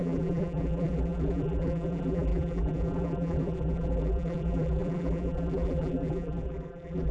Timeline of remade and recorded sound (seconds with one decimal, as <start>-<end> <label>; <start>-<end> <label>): 0.0-7.1 remade